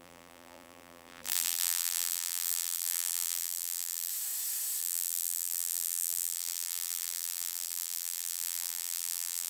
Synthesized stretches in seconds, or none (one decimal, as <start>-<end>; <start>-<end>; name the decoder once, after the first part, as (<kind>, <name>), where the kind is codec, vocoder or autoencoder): 0.0-4.1 (vocoder, BigVGAN v2); 4.8-9.5